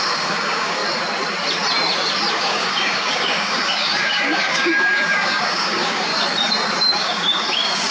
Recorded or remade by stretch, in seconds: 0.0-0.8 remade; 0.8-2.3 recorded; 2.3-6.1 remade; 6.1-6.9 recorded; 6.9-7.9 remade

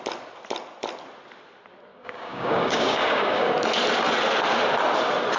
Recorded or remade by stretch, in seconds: 0.0-1.9 recorded; 1.9-3.5 remade; 3.5-5.4 recorded

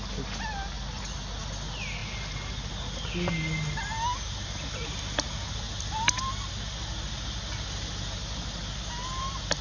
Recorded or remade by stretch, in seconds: 0.0-9.6 recorded